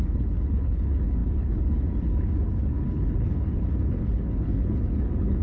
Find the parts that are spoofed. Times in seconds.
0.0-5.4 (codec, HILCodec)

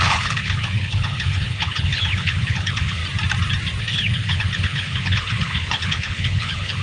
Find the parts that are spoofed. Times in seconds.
0.0-3.0 (codec, HILCodec); 3.8-6.8

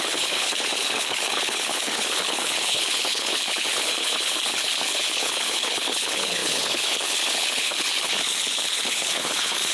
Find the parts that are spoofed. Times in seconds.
0.0-9.7 (codec, HILCodec)

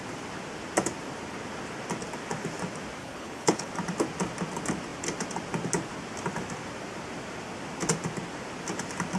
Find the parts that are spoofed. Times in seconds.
3.0-3.7 (codec, HILCodec)

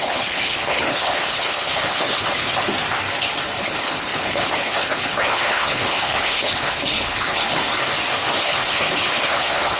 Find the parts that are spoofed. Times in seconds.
0.0-2.7 (codec, HILCodec); 3.6-7.6; 8.4-9.8

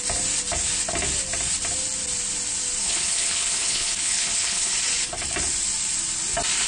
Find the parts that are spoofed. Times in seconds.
2.8-4.7 (codec, HILCodec)